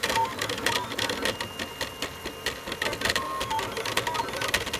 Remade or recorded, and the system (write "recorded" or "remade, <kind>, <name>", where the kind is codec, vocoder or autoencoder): recorded